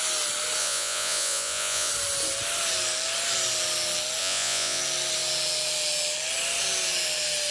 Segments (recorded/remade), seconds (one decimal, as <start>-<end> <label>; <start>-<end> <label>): 0.0-0.6 recorded; 0.6-1.9 remade; 1.9-4.2 recorded; 4.2-4.8 remade; 4.8-7.5 recorded